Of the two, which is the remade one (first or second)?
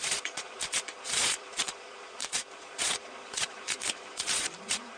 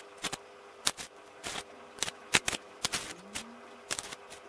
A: first